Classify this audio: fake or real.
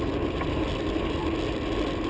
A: real